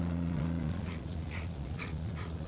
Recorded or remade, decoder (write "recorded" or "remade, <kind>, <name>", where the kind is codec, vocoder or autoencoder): remade, vocoder, Vocos